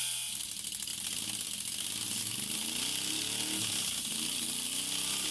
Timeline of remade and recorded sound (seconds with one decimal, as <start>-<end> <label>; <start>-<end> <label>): 0.0-5.3 recorded